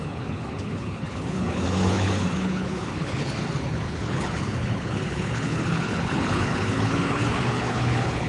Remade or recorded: remade